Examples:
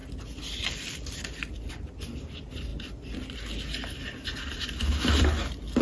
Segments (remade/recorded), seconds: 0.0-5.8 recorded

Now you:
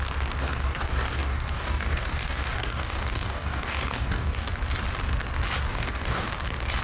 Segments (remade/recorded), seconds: 0.0-0.4 recorded; 0.4-4.5 remade; 4.5-5.7 recorded; 5.7-6.3 remade; 6.3-6.8 recorded

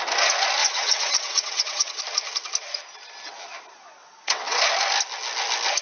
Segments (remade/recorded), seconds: 0.0-0.6 recorded; 0.6-2.0 remade; 2.0-4.0 recorded; 4.0-4.6 remade; 4.6-5.8 recorded

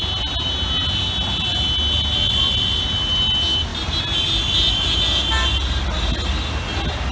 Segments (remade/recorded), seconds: 0.0-7.1 recorded

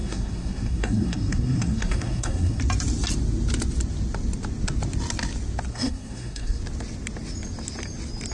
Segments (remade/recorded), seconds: 0.0-2.6 remade; 2.6-5.7 recorded; 5.7-6.6 remade; 6.6-8.3 recorded